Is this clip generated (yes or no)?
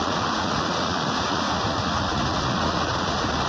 yes